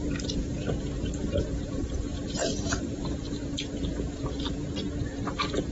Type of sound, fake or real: fake